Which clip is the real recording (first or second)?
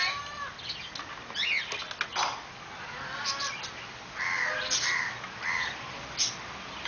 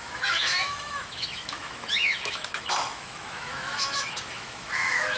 first